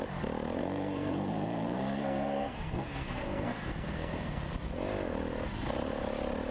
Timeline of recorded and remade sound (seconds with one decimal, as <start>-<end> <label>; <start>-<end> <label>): 0.0-0.6 recorded; 0.6-4.5 remade; 4.5-6.5 recorded